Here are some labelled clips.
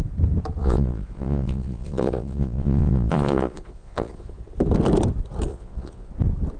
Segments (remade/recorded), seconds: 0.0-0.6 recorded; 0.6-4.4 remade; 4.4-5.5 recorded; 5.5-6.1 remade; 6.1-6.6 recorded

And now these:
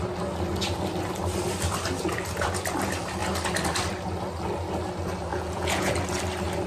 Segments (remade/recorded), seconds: 0.0-5.3 recorded; 5.3-5.9 remade; 5.9-6.7 recorded

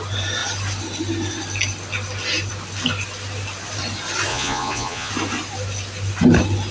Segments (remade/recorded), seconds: 0.0-4.3 recorded; 4.3-5.1 remade; 5.1-6.7 recorded

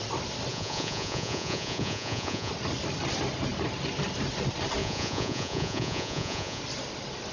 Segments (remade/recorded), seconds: 0.0-0.5 recorded; 0.5-2.5 remade; 2.5-4.8 recorded; 4.8-6.6 remade; 6.6-7.3 recorded